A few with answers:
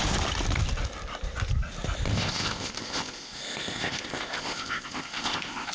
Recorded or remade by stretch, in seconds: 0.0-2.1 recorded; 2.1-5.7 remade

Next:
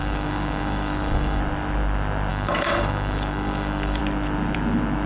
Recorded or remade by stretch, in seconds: 0.0-1.4 remade; 1.4-2.3 recorded; 2.3-4.0 remade; 4.0-5.1 recorded

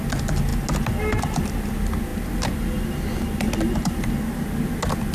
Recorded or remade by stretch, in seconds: 0.0-5.1 recorded

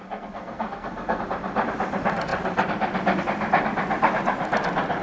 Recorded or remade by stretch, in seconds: 0.0-1.2 remade; 1.2-5.0 recorded

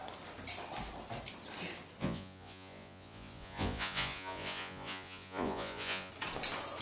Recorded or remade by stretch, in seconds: 0.0-2.0 recorded; 2.0-6.1 remade; 6.1-6.8 recorded

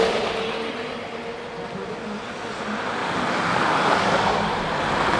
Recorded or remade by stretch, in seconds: 0.0-3.0 recorded; 3.0-4.6 remade; 4.6-5.2 recorded

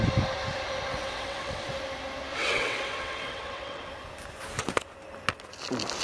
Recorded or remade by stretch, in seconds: 0.0-0.9 recorded; 0.9-1.7 remade; 1.7-2.3 recorded; 2.3-3.9 remade; 3.9-6.0 recorded

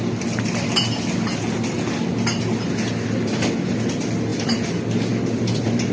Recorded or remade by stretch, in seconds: 0.0-5.9 recorded